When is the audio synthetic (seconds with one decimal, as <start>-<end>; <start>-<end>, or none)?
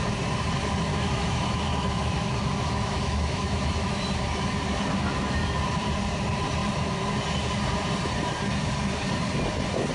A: 0.9-4.0